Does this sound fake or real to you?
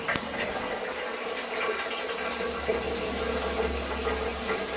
real